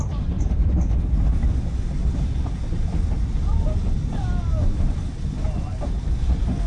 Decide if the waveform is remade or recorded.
recorded